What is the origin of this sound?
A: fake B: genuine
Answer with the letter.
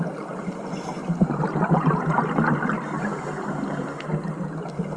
B